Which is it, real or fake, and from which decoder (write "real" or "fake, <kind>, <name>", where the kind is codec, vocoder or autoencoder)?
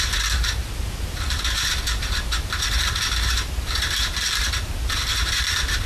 fake, vocoder, BigVGAN v2